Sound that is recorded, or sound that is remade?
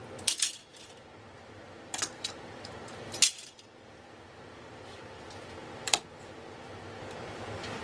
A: remade